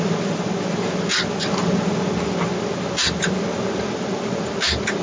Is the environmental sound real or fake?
real